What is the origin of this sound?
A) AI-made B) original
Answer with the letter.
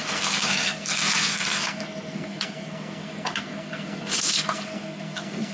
A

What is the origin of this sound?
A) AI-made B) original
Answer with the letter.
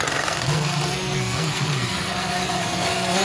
A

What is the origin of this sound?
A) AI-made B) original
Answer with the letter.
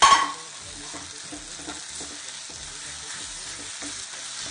B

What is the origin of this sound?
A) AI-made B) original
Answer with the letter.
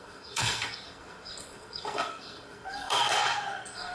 A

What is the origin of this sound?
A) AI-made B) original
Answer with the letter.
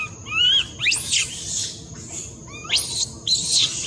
B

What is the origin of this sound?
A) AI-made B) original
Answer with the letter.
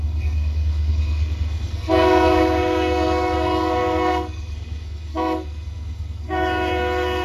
A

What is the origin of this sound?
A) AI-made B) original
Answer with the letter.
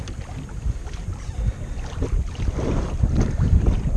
B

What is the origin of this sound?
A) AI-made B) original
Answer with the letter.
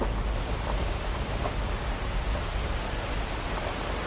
B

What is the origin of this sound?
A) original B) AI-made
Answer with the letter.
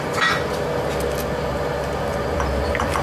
A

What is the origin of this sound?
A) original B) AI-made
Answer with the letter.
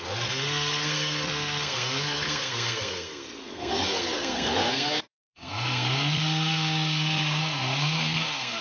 B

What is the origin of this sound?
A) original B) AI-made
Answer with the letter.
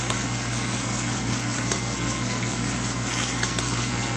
B